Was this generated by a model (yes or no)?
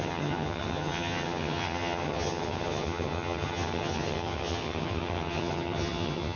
yes